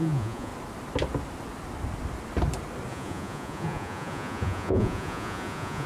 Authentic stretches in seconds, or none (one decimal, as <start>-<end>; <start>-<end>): 0.5-2.9